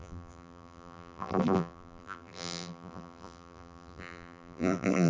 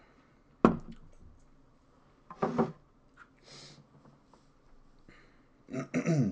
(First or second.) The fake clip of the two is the first